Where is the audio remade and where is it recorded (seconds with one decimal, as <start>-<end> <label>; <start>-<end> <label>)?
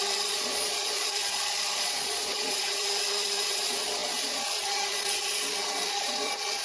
0.0-6.6 remade